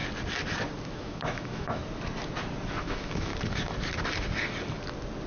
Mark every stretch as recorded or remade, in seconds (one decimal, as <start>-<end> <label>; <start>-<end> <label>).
0.0-0.9 recorded; 0.9-1.8 remade; 1.8-2.8 recorded; 2.8-3.3 remade; 3.3-5.3 recorded